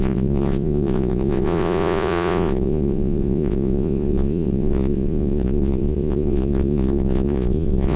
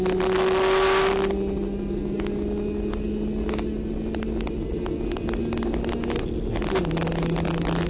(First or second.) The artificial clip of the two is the first